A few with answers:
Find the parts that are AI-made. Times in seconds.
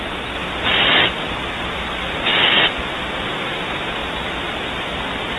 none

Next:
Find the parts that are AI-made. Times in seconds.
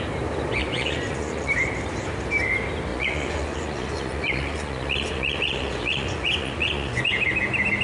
0.6-1.5 (vocoder, Vocos); 2.9-7.1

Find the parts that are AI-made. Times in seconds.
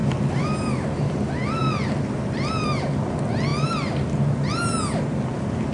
none